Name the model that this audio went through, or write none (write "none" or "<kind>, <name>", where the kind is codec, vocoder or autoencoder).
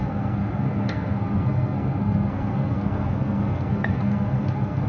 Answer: codec, SNAC